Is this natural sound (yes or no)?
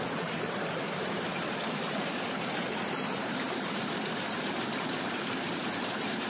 no